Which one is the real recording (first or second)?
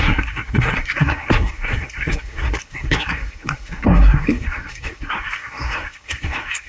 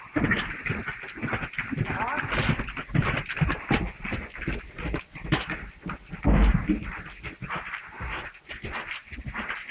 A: second